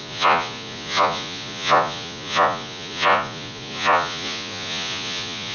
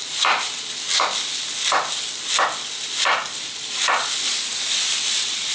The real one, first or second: second